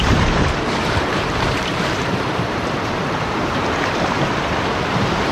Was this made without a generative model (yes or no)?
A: no